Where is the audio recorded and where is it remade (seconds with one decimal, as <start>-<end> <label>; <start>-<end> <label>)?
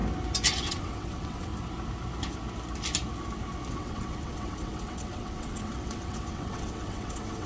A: 0.0-0.6 recorded; 0.6-1.5 remade; 1.5-3.7 recorded; 3.7-7.5 remade